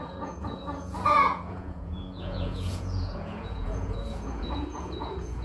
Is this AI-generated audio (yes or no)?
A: yes